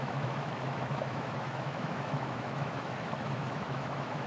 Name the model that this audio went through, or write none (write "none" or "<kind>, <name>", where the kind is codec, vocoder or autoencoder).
autoencoder, DAC-VAE